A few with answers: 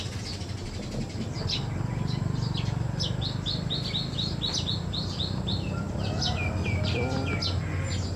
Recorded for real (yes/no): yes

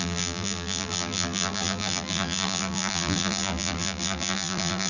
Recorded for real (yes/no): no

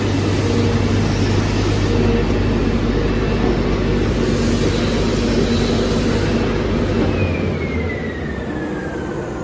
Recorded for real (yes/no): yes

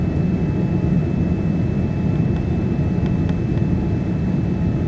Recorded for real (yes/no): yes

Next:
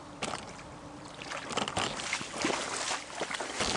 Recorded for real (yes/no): yes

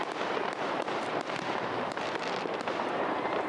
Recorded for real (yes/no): yes